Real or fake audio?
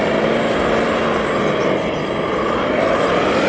real